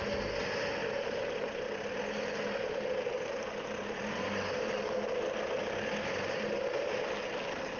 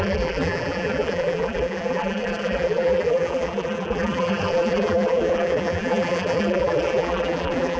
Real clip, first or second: first